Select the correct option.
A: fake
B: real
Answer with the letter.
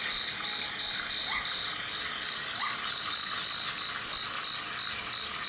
B